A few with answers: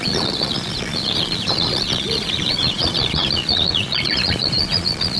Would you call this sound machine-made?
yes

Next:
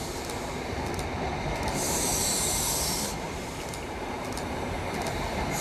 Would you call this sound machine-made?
no